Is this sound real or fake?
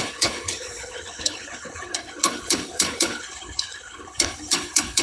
fake